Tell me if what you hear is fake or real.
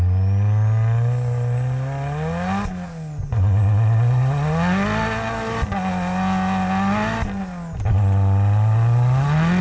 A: real